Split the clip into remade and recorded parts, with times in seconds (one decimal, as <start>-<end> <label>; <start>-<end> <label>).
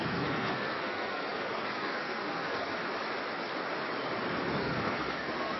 0.0-2.8 remade; 2.8-4.6 recorded; 4.6-5.6 remade